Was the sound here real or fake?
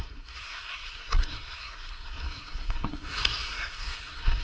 fake